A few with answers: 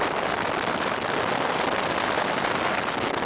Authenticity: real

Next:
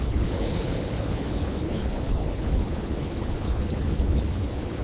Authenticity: fake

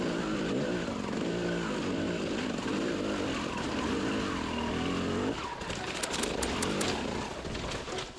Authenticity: real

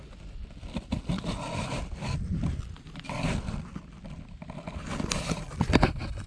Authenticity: real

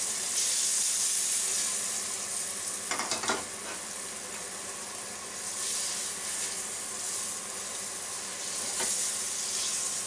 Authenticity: real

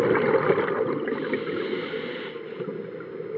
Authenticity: real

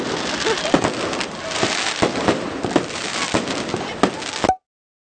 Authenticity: real